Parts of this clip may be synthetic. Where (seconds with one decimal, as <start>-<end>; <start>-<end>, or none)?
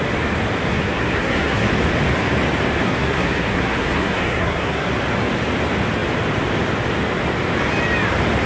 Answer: 0.7-1.7; 2.8-4.9